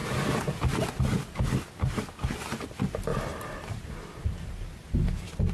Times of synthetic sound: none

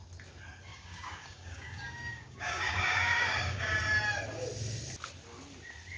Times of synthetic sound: 0.7-3.8 (codec, DAC)

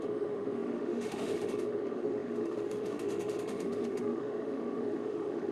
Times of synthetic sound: 0.0-5.5 (autoencoder, DAC-VAE)

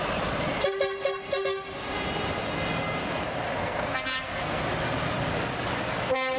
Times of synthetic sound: 3.6-4.6 (codec, SNAC)

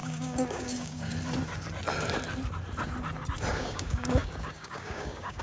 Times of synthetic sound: 0.0-1.1 (codec, DAC); 3.5-5.4

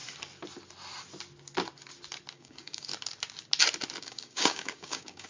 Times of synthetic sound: 2.3-2.9 (codec, DAC); 4.0-5.3